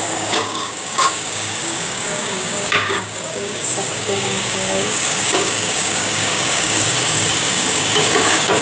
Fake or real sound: fake